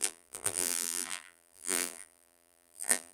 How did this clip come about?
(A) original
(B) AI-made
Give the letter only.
B